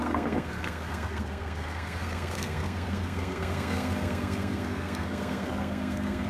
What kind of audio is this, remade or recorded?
remade